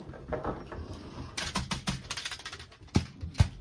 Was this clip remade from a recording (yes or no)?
no